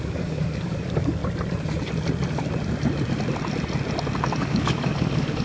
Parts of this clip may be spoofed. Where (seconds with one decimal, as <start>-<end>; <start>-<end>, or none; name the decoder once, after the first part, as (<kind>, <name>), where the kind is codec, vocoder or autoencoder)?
0.0-1.2 (codec, DAC); 4.4-5.4

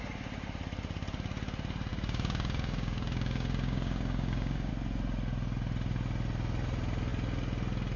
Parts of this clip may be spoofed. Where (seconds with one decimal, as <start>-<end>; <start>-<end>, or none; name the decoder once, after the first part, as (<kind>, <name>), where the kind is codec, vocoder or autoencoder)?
1.9-4.7 (codec, DAC)

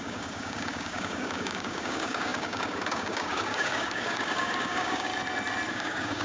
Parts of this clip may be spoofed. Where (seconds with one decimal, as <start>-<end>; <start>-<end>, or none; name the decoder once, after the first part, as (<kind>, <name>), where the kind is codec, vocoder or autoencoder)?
0.0-5.1 (codec, DAC); 5.7-6.2

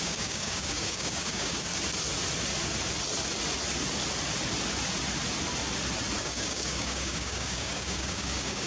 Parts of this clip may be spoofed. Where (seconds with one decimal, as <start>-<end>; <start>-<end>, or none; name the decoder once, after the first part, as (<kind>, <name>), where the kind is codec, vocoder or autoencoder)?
0.0-1.7 (codec, DAC); 6.2-8.7